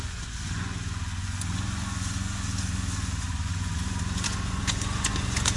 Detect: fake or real fake